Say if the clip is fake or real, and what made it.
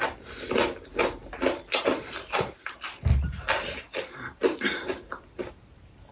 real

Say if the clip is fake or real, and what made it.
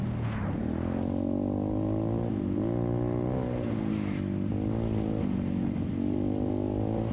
real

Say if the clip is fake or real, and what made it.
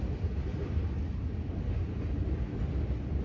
real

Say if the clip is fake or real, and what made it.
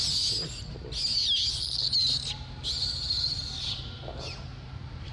real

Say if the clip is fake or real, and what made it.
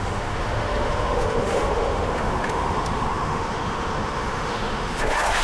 fake, autoencoder, DAC-VAE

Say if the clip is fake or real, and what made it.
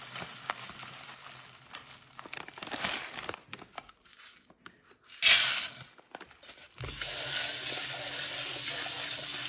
real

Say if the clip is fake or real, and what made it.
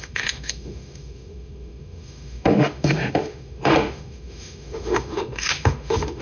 fake, autoencoder, DAC-VAE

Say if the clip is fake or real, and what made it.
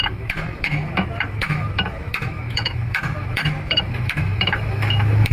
fake, autoencoder, DAC-VAE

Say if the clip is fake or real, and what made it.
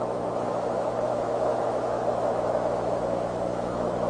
fake, autoencoder, DAC-VAE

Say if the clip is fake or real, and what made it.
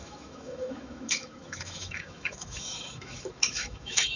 fake, autoencoder, DAC-VAE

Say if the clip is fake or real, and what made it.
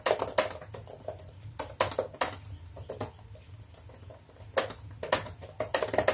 real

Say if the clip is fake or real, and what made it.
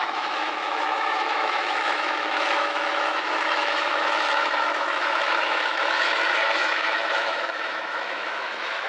fake, autoencoder, DAC-VAE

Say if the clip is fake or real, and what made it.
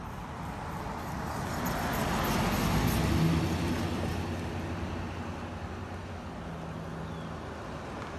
real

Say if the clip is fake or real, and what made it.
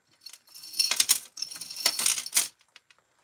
real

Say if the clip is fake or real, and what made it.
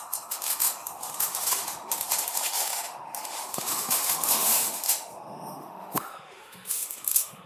fake, autoencoder, DAC-VAE